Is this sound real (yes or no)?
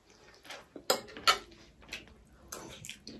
yes